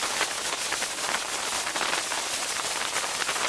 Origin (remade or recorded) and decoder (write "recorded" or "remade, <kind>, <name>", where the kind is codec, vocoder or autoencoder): recorded